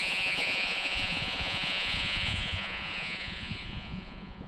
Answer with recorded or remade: remade